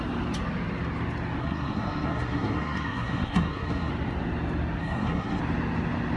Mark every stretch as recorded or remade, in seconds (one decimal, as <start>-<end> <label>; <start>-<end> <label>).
0.0-1.4 recorded; 1.4-3.9 remade; 3.9-4.8 recorded; 4.8-5.4 remade; 5.4-6.2 recorded